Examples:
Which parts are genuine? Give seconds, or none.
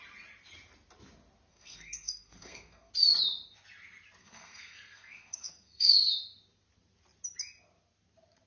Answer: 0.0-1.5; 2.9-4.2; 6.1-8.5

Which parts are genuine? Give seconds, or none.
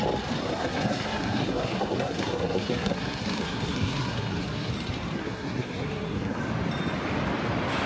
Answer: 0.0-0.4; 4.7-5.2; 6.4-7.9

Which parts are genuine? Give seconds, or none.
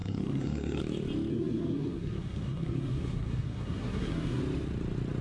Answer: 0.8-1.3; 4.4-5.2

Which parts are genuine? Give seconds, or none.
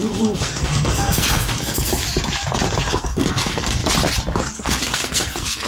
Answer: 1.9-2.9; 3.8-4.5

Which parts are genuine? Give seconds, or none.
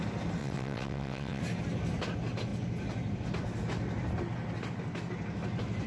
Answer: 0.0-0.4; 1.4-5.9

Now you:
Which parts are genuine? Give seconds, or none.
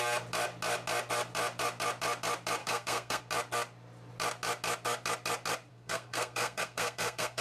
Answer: 0.0-2.6; 3.2-5.7